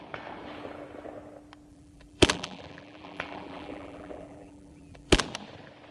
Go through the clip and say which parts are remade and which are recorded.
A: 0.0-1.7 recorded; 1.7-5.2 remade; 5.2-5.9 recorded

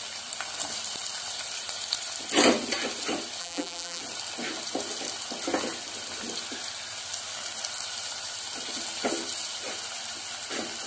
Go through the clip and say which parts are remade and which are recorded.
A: 0.0-3.4 recorded; 3.4-4.0 remade; 4.0-10.9 recorded

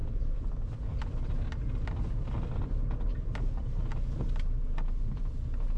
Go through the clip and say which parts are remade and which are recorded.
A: 0.0-3.5 remade; 3.5-3.9 recorded; 3.9-4.6 remade; 4.6-5.8 recorded

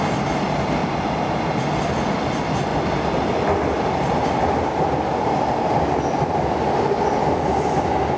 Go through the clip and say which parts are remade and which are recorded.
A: 0.0-8.2 recorded